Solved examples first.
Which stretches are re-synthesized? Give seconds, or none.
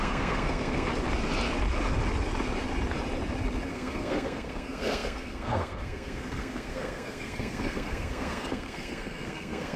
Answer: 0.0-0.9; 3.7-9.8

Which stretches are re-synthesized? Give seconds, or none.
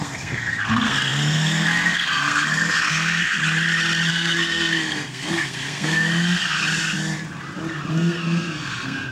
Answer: 0.0-3.4; 4.1-6.6; 7.9-9.1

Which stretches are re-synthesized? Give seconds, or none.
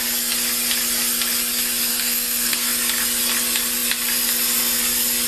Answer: 1.9-2.7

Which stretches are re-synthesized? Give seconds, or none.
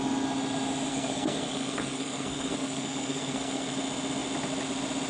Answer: 0.9-3.7